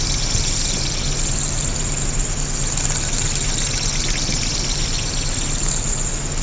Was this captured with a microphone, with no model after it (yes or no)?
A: yes